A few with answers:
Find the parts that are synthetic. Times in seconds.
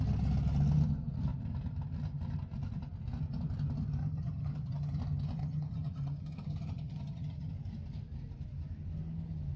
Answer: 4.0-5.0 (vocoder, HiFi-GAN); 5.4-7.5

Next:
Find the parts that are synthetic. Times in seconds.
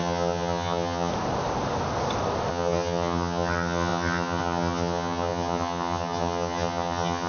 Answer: 0.0-1.1 (vocoder, HiFi-GAN); 2.5-7.3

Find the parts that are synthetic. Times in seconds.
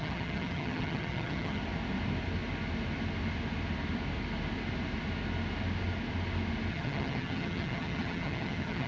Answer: 0.0-1.6 (vocoder, HiFi-GAN); 6.7-8.9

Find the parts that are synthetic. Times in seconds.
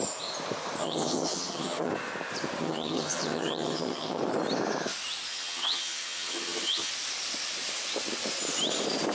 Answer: 0.8-1.9 (vocoder, HiFi-GAN); 2.6-4.2; 5.3-6.9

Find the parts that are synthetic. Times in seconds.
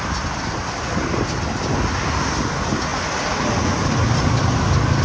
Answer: none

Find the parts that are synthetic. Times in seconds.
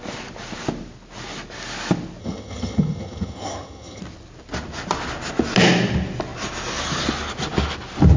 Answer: 2.2-4.0 (vocoder, HiFi-GAN)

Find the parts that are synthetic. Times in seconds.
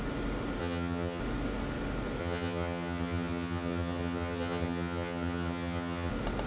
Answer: 0.6-1.2 (vocoder, HiFi-GAN); 2.2-6.1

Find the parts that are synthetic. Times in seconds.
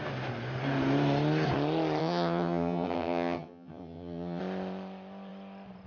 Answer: 2.0-4.4 (vocoder, HiFi-GAN)